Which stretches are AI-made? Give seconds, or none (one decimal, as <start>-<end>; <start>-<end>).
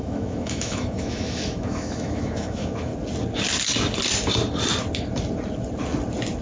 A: 0.0-2.9